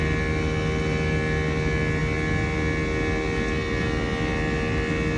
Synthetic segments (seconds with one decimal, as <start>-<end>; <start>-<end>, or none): none